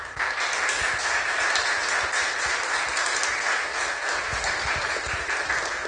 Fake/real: real